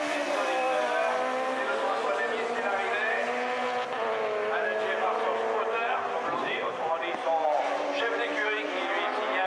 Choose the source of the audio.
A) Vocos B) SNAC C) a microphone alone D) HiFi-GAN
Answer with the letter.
C